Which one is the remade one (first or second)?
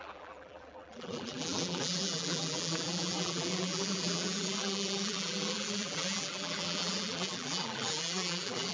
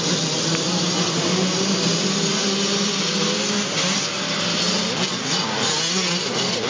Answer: first